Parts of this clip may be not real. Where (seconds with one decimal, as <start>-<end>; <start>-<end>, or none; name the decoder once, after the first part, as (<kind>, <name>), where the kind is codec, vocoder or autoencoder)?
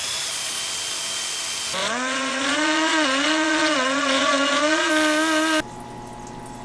0.0-0.6 (vocoder, Vocos); 1.8-4.9